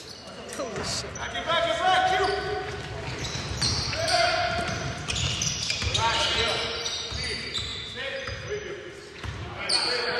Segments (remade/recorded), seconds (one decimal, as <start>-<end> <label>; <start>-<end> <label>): 0.0-0.9 remade; 0.9-3.3 recorded; 3.3-10.2 remade

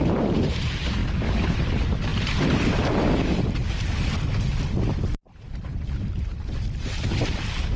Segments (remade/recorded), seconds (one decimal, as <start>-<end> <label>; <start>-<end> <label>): 0.0-1.0 remade; 1.0-1.7 recorded; 1.7-7.8 remade

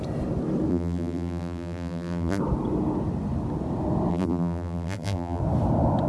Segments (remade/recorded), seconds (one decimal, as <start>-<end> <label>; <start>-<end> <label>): 0.0-0.7 recorded; 0.7-2.4 remade; 2.4-4.1 recorded; 4.1-5.4 remade; 5.4-6.1 recorded

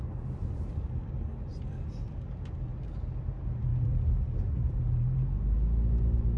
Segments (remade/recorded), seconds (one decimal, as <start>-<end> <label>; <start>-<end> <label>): 0.0-2.7 remade; 2.7-3.2 recorded; 3.2-5.2 remade; 5.2-6.4 recorded

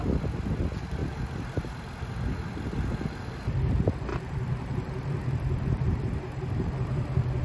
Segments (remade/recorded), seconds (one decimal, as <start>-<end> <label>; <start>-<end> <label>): 0.0-4.1 recorded; 4.1-7.4 remade